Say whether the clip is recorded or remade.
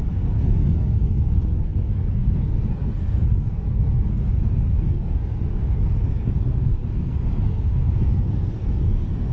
remade